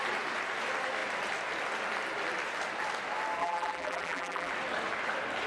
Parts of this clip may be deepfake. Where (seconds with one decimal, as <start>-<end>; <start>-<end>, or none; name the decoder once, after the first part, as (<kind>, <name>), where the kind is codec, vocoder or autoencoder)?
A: 3.4-4.5 (vocoder, BigVGAN v2)

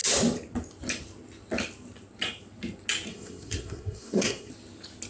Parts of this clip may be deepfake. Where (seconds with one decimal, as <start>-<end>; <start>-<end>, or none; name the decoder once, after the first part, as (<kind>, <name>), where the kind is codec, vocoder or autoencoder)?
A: 3.1-4.5 (codec, SNAC)

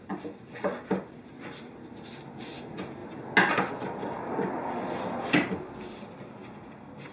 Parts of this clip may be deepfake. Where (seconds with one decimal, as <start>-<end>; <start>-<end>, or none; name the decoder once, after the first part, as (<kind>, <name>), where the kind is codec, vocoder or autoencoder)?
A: none

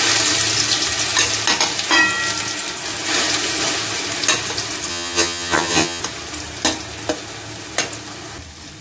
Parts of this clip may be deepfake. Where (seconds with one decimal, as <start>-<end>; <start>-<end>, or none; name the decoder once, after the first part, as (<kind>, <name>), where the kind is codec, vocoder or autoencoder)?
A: 4.9-6.0 (vocoder, HiFi-GAN)

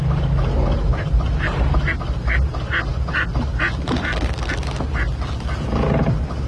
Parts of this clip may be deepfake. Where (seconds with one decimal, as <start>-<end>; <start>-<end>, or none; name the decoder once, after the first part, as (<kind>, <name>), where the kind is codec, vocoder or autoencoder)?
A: none

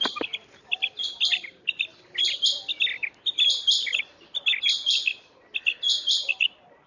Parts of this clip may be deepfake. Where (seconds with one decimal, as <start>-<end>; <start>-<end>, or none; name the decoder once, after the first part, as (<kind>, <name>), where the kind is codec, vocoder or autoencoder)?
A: none

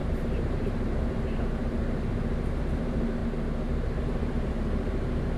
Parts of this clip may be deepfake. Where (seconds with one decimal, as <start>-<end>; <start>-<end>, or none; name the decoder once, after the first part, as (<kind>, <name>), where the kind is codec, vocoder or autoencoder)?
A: 0.0-1.8 (vocoder, BigVGAN v2); 2.6-3.2; 4.0-5.4